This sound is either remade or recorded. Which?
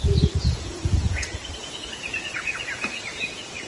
remade